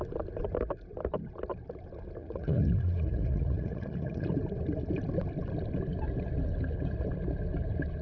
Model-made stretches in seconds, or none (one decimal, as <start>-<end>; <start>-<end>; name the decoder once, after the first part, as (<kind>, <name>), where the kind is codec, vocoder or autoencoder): 2.2-4.3 (vocoder, Vocos)